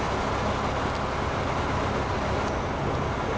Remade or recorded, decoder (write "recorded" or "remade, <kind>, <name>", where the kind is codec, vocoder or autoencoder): recorded